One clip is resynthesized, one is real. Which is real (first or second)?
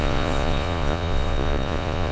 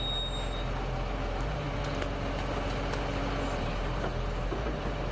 second